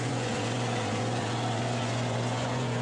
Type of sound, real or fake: fake